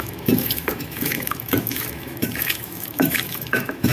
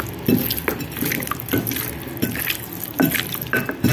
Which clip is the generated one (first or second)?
first